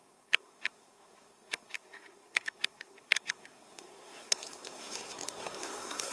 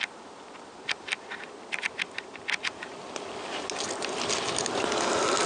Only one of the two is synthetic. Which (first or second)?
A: first